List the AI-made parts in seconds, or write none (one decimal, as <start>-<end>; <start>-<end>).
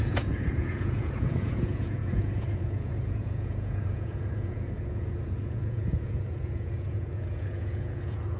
0.0-8.4